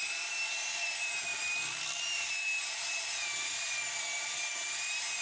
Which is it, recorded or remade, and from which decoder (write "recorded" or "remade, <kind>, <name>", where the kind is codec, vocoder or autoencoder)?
recorded